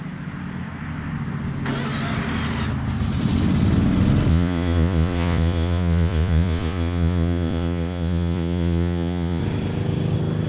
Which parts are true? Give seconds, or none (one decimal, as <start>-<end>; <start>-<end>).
0.0-4.3; 9.4-10.5